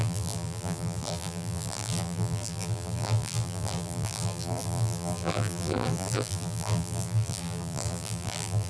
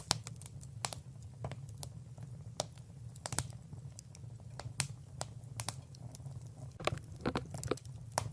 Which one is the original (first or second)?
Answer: second